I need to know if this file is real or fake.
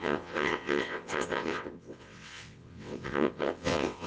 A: fake